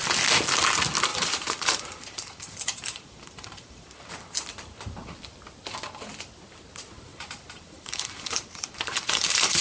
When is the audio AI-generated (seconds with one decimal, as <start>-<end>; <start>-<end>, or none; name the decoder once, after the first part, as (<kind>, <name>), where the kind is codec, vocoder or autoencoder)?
1.1-4.1 (vocoder, BigVGAN v2); 7.1-9.6